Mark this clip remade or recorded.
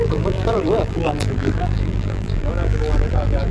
remade